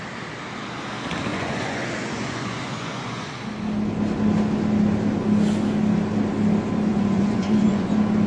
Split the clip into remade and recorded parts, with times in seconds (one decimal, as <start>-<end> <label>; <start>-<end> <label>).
0.0-1.3 recorded; 1.3-3.3 remade; 3.3-6.9 recorded; 6.9-7.9 remade; 7.9-8.3 recorded